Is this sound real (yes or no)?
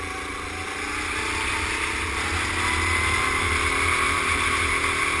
yes